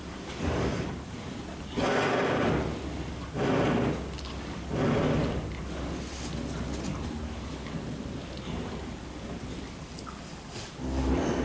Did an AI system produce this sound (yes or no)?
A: no